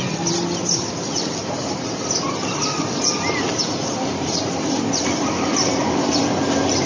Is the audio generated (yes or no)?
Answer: yes